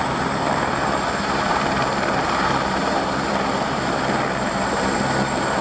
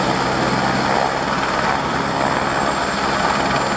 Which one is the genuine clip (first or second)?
second